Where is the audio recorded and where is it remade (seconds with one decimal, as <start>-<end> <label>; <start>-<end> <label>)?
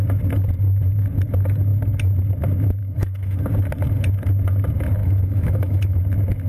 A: 0.0-2.8 recorded; 2.8-3.4 remade; 3.4-5.0 recorded; 5.0-6.0 remade; 6.0-6.5 recorded